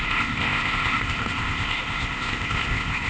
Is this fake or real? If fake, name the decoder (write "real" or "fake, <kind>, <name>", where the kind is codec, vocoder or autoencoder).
fake, codec, ZipCodec